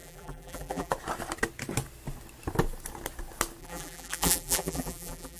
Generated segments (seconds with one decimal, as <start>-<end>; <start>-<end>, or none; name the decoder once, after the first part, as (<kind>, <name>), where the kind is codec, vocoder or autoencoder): 0.0-0.9 (vocoder, BigVGAN v2); 3.6-5.4